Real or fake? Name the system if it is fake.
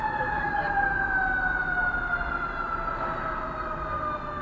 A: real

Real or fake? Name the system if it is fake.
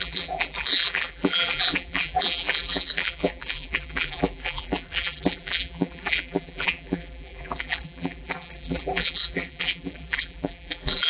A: fake, vocoder, BigVGAN v2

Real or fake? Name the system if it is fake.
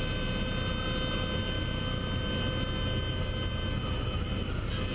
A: real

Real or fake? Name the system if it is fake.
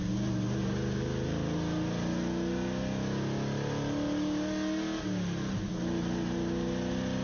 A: real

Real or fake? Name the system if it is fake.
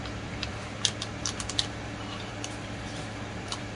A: fake, vocoder, BigVGAN v2